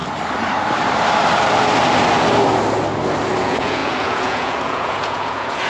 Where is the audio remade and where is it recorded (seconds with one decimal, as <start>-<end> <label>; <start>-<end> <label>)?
0.0-3.4 recorded; 3.4-5.7 remade